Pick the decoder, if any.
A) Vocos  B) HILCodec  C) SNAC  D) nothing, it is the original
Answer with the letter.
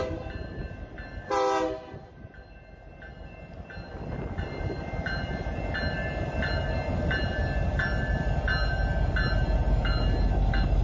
D